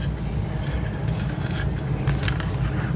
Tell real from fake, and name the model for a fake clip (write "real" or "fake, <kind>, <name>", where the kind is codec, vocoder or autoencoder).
real